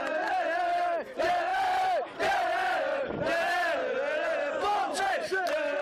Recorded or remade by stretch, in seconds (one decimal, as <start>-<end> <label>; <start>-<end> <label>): 0.0-5.8 recorded